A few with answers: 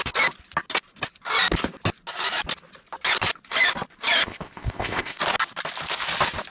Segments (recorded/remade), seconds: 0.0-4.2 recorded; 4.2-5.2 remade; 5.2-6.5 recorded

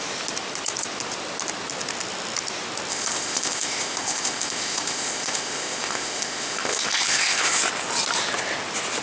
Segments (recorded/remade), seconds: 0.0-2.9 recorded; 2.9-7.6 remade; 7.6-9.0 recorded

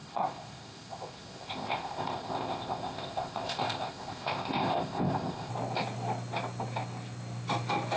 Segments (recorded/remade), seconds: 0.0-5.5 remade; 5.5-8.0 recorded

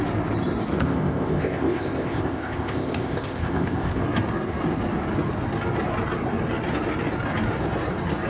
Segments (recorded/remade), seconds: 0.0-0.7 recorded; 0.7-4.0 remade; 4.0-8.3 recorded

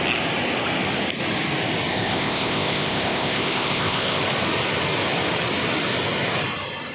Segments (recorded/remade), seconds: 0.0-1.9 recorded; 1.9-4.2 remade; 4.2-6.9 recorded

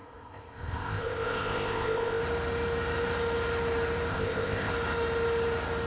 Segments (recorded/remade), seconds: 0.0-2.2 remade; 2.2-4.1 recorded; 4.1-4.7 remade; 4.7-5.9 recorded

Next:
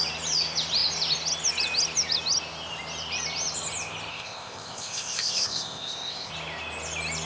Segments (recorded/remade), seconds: 0.0-4.1 recorded; 4.1-6.3 remade; 6.3-7.3 recorded